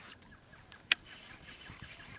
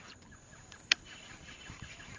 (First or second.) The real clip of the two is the first